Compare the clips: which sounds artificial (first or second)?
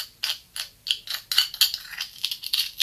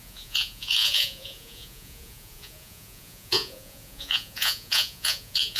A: second